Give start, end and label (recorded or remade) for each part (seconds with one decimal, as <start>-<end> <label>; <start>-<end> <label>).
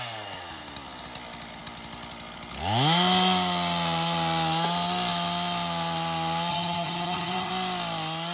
0.0-6.5 recorded; 6.5-7.5 remade; 7.5-8.3 recorded